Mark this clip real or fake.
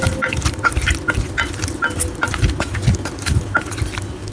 real